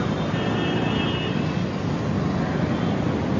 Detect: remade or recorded recorded